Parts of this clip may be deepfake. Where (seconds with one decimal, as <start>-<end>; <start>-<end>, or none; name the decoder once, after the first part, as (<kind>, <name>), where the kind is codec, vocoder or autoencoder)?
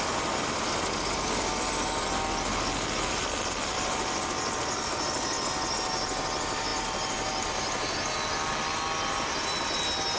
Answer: none